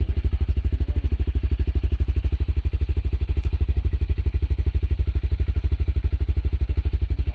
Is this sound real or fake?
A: real